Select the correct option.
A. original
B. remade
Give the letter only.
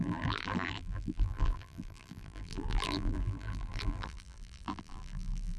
B